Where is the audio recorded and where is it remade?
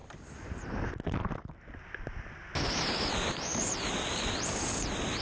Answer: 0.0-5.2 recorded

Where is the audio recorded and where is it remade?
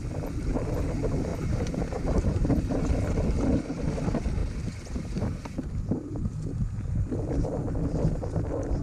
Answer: 0.0-1.3 recorded; 1.3-2.8 remade; 2.8-4.4 recorded; 4.4-5.7 remade; 5.7-8.8 recorded